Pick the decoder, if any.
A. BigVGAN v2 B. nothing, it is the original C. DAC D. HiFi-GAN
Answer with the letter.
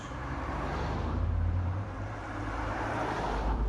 A